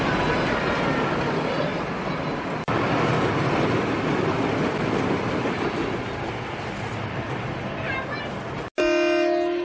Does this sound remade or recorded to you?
recorded